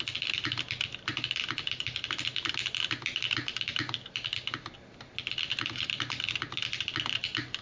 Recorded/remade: recorded